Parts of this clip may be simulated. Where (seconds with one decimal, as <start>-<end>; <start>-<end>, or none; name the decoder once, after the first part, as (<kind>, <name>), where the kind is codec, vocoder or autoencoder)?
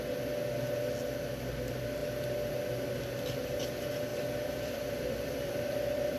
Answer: 4.1-6.2 (vocoder, BigVGAN v2)